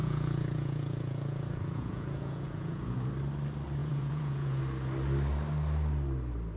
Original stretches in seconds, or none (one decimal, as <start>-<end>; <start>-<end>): 3.1-3.8; 4.6-6.6